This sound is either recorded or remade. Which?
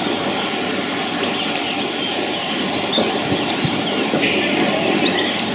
recorded